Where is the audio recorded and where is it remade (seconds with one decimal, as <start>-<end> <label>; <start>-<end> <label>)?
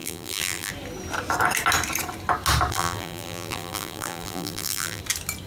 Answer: 0.0-0.7 remade; 0.7-2.7 recorded; 2.7-5.0 remade; 5.0-5.5 recorded